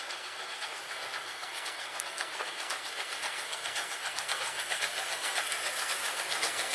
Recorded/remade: remade